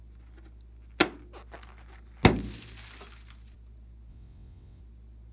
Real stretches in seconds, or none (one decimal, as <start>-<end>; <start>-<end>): 0.0-4.1; 4.8-5.3